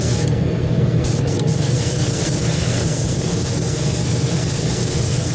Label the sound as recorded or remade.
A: remade